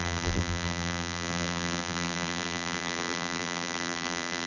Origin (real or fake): fake